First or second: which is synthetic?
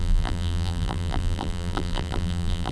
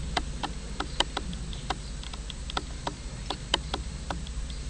first